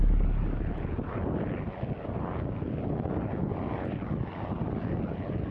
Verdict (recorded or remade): recorded